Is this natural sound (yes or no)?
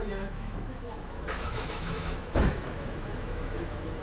no